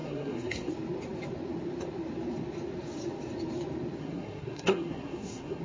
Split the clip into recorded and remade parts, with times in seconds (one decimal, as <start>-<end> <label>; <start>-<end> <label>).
0.0-0.7 remade; 0.7-4.0 recorded; 4.0-5.6 remade